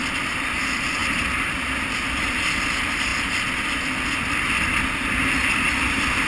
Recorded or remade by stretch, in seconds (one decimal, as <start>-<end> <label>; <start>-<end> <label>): 0.0-6.3 recorded